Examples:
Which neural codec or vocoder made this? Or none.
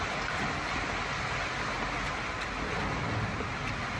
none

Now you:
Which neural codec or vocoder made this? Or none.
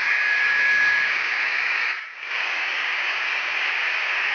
codec, DAC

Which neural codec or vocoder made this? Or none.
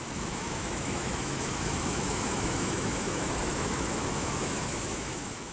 autoencoder, DAC-VAE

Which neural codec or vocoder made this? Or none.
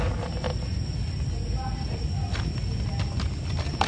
none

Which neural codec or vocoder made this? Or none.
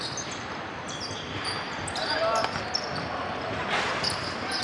none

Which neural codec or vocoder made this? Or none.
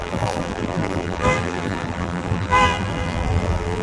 vocoder, BigVGAN v2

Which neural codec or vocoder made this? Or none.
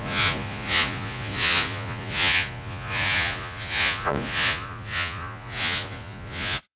vocoder, Vocos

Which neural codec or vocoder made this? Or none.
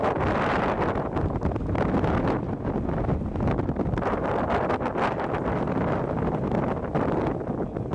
none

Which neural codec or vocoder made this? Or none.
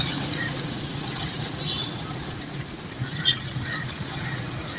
vocoder, Vocos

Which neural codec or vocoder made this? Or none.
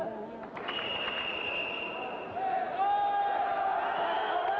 none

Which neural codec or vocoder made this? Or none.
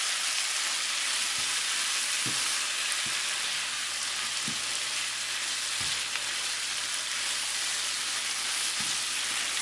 none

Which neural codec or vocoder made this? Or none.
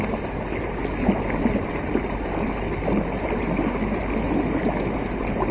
none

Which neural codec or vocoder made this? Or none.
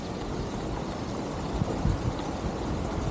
vocoder, BigVGAN v2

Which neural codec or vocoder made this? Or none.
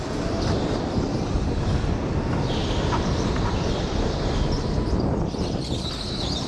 none